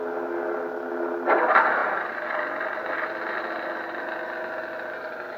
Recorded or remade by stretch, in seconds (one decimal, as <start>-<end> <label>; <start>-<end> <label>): 0.0-5.4 recorded